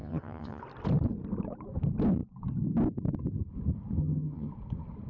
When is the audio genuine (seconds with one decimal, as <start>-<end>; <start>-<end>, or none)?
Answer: 0.6-4.0; 4.5-5.1